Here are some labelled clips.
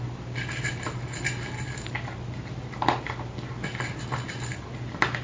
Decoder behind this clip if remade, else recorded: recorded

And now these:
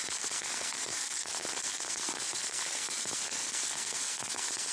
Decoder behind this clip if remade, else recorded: remade, codec, SNAC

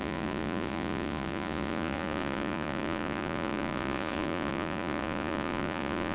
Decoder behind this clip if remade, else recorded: remade, vocoder, Vocos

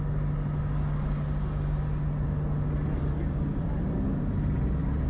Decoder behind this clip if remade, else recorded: recorded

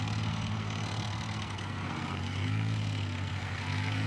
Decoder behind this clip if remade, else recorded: remade, codec, SNAC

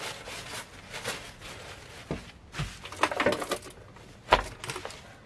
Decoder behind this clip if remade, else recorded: recorded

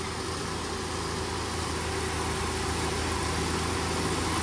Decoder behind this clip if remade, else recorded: recorded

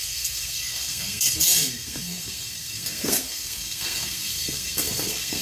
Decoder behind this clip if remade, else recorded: remade, codec, SNAC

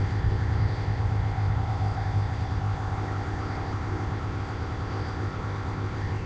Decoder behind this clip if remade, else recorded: remade, codec, ZipCodec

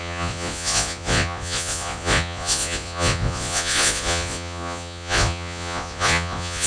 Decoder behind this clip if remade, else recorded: remade, vocoder, Vocos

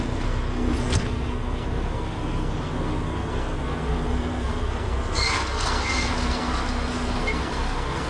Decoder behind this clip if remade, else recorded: remade, codec, SNAC